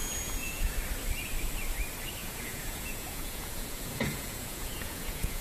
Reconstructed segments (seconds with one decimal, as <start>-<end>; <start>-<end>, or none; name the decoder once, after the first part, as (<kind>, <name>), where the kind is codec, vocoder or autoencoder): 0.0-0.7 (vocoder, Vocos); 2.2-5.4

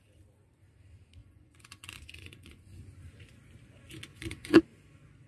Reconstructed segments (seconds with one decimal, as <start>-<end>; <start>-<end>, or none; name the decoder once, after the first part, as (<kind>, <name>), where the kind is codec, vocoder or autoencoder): 1.2-2.8 (vocoder, Vocos); 4.1-4.6

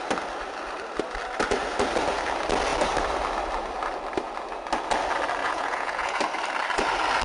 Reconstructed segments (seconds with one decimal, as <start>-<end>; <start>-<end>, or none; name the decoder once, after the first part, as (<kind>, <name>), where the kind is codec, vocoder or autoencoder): 5.4-6.2 (vocoder, Vocos)

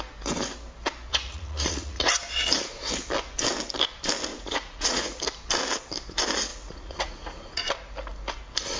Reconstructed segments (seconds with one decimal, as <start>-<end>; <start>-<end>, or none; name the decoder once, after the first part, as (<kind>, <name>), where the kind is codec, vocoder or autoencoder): 1.1-2.1 (vocoder, Vocos); 4.3-5.2; 6.5-7.7

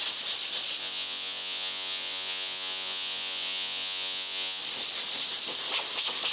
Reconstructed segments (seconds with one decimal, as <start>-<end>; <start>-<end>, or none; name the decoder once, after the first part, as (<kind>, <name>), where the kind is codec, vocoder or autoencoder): 0.8-4.6 (vocoder, Vocos)

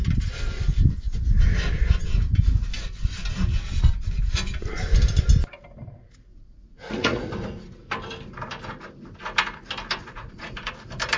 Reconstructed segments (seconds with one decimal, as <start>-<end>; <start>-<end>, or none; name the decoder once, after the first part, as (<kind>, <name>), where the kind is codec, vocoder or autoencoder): 6.3-7.3 (vocoder, Vocos); 10.0-10.7

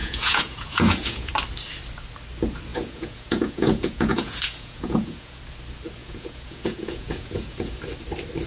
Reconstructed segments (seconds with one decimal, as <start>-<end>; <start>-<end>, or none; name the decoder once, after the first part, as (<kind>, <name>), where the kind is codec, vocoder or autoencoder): 0.0-1.3 (vocoder, Vocos); 2.7-5.4; 6.0-7.8

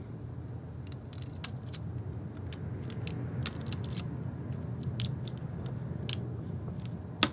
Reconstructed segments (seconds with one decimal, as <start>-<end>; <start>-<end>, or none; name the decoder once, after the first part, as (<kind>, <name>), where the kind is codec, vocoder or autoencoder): none